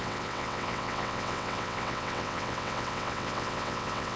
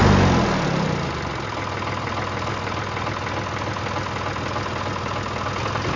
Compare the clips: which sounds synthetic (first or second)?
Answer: first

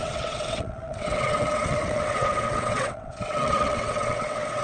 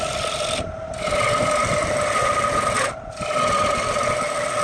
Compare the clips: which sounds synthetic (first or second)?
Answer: first